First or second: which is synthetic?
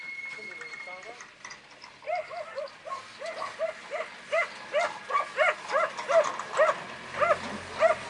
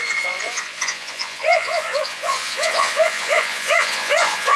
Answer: second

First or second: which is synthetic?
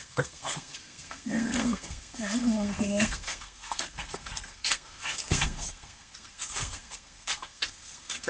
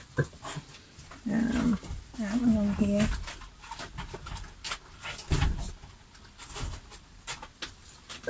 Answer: first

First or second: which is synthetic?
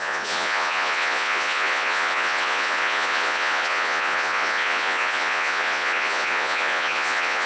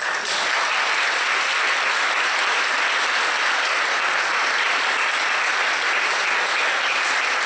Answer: first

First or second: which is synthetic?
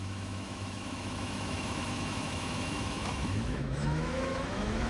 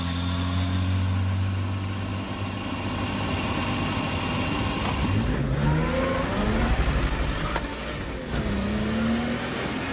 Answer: first